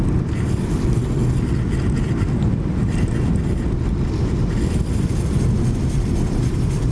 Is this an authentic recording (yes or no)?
yes